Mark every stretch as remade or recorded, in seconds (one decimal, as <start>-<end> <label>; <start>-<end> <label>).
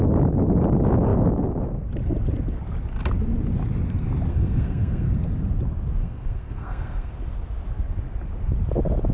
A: 0.0-4.3 recorded; 4.3-5.2 remade; 5.2-6.0 recorded; 6.0-7.1 remade; 7.1-9.1 recorded